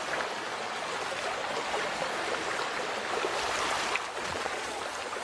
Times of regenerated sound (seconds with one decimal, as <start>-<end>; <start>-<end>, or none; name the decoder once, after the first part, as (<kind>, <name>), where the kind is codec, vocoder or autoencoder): 4.2-4.8 (vocoder, Vocos)